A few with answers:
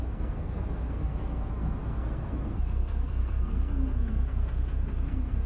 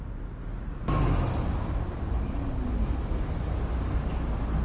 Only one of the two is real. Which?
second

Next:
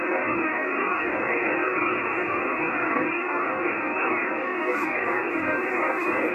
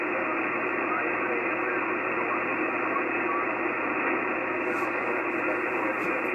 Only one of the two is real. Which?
second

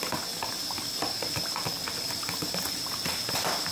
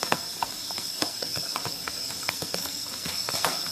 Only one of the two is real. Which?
first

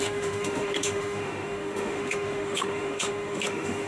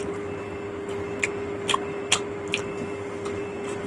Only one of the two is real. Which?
second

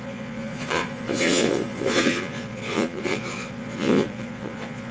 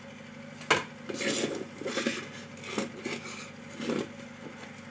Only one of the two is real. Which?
second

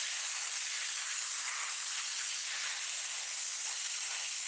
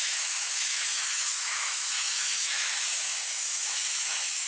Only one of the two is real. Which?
first